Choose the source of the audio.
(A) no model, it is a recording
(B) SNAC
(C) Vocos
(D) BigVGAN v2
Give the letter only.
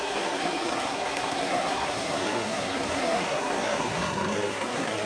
B